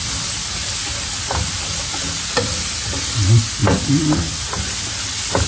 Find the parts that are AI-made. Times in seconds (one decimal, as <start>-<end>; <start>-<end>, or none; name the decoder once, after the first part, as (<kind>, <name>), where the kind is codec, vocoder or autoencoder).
none